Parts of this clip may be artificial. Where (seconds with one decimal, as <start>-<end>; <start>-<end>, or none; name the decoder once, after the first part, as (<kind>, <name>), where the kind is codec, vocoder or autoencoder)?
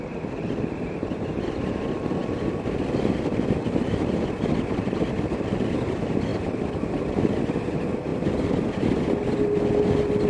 6.3-7.2 (vocoder, BigVGAN v2)